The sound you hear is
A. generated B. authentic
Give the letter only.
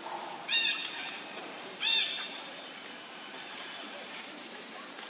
A